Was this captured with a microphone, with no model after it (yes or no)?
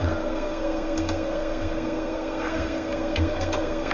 no